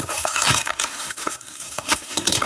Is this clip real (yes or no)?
no